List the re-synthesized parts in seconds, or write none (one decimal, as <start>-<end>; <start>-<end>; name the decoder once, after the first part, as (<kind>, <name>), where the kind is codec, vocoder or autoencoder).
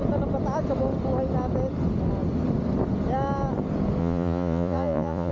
4.0-5.3 (vocoder, Vocos)